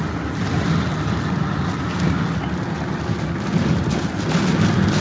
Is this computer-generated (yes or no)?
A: no